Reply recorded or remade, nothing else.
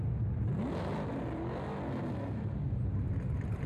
recorded